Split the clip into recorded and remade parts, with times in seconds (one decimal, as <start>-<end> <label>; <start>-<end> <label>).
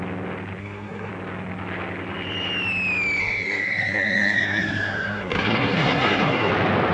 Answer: 0.0-0.6 recorded; 0.6-1.1 remade; 1.1-3.2 recorded; 3.2-6.5 remade; 6.5-6.9 recorded